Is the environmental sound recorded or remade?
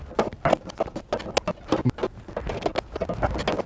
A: recorded